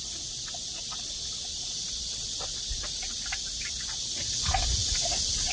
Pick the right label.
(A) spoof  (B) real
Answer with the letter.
B